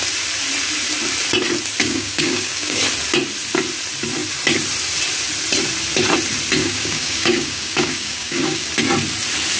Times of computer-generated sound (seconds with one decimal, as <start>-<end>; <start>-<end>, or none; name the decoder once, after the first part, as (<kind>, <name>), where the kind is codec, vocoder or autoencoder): 1.8-2.8 (codec, DAC); 6.6-8.7

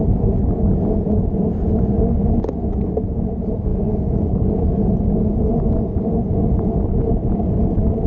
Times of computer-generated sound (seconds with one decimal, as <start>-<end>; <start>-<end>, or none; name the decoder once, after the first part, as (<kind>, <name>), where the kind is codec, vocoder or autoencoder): none

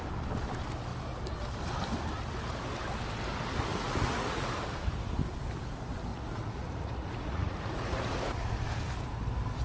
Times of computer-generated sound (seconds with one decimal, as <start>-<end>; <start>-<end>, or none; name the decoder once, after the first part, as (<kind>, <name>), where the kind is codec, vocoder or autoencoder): 3.7-4.5 (vocoder, Vocos); 6.1-8.5